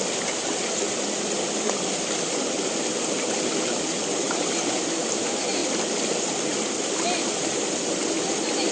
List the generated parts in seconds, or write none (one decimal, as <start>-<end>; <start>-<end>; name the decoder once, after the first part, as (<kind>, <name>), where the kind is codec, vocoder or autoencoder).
none